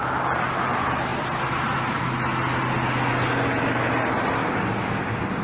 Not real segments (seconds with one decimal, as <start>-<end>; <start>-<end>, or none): 4.4-5.4